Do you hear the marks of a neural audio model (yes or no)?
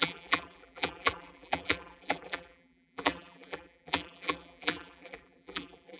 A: yes